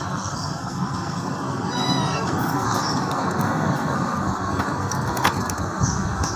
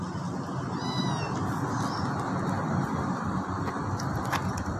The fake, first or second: first